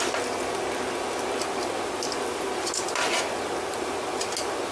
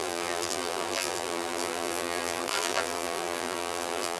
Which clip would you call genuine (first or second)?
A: first